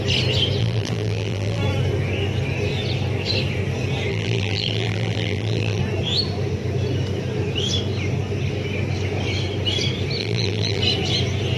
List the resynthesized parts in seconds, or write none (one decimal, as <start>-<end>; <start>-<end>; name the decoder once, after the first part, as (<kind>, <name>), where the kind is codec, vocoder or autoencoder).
0.6-1.6 (vocoder, BigVGAN v2); 4.1-5.8; 10.2-10.8